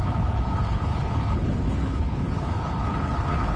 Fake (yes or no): yes